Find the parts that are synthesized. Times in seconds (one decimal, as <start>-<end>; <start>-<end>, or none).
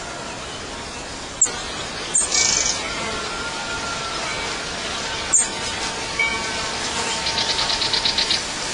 none